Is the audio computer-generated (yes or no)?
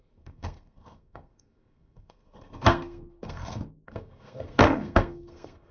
yes